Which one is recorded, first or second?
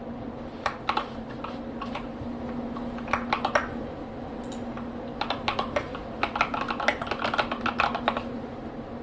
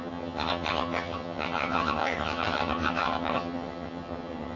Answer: first